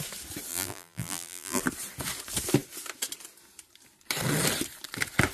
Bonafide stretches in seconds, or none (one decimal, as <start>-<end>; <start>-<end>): 0.0-0.5; 1.6-5.3